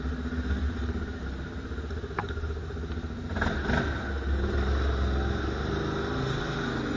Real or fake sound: real